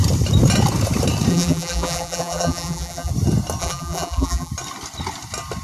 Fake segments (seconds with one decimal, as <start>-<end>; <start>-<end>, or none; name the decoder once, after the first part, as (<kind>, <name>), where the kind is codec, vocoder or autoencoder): 1.3-3.1 (vocoder, BigVGAN v2); 3.6-4.5